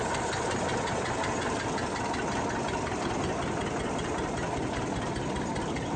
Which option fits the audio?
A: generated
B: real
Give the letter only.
B